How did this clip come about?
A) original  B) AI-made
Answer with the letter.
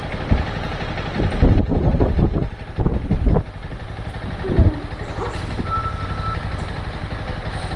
A